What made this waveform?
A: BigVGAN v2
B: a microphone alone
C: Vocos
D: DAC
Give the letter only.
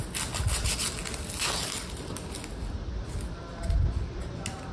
B